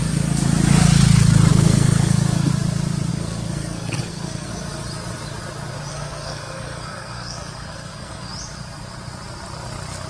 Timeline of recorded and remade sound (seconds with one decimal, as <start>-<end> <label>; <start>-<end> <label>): 0.0-1.5 recorded; 1.5-2.5 remade; 2.5-3.1 recorded; 3.1-4.5 remade; 4.5-5.9 recorded; 5.9-8.3 remade; 8.3-10.1 recorded